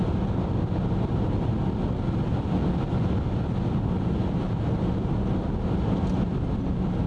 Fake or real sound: real